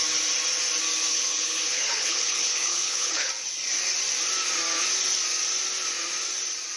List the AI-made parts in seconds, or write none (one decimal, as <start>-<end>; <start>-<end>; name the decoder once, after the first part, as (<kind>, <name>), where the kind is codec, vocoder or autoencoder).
1.1-3.3 (codec, HILCodec)

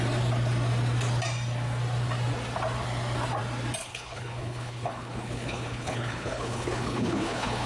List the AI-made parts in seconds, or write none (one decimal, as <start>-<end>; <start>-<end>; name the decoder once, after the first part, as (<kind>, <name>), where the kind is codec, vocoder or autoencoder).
3.8-7.7 (codec, HILCodec)

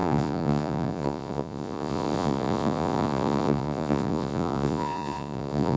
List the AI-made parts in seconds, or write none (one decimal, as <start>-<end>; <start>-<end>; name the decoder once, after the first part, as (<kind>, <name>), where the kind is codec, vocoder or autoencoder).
0.0-5.8 (vocoder, Vocos)

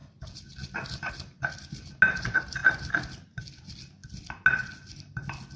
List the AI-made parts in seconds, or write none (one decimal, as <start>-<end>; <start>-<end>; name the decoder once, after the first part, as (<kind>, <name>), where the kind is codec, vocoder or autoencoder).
none

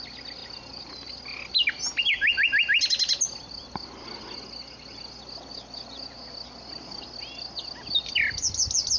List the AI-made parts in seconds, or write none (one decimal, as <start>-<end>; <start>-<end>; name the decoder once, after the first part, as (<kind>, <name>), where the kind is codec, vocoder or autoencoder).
none